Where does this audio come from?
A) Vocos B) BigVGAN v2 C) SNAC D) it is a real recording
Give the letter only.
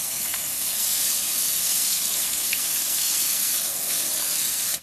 C